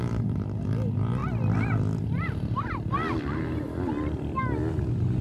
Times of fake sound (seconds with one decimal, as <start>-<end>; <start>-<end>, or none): none